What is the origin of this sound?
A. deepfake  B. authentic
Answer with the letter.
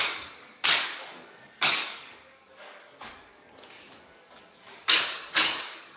A